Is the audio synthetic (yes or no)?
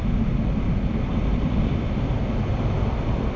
no